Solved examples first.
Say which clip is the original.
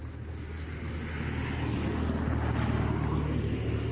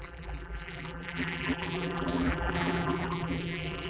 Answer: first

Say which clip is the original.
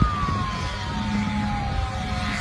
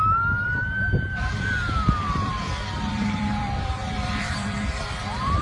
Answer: first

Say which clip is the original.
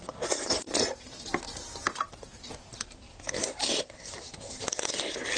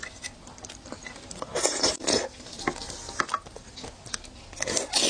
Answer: second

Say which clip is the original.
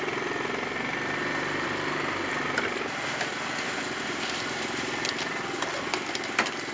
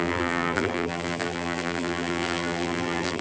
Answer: first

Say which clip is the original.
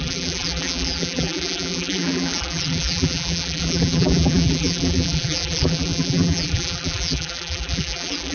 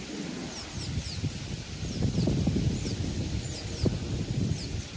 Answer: second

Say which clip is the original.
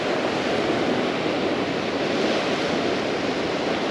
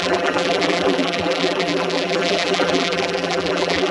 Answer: first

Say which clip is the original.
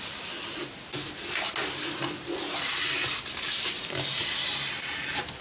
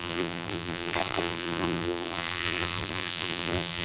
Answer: first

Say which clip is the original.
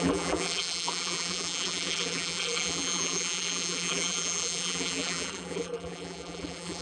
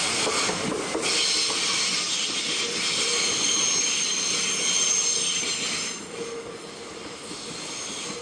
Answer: second